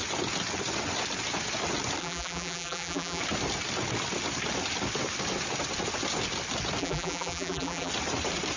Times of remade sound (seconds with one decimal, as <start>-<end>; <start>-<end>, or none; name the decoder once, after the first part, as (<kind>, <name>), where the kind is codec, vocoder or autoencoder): 2.0-3.2 (vocoder, BigVGAN v2); 6.8-7.9